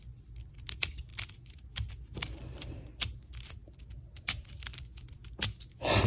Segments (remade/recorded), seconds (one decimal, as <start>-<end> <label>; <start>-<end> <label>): 0.0-3.6 recorded; 3.6-4.8 remade; 4.8-6.1 recorded